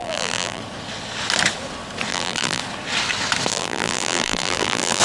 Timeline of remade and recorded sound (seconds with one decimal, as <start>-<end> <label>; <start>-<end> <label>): 0.0-0.6 remade; 0.6-2.1 recorded; 2.1-2.6 remade; 2.6-3.5 recorded; 3.5-5.0 remade